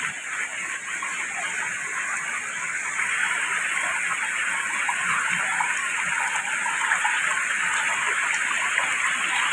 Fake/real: real